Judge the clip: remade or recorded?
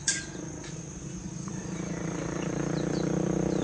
remade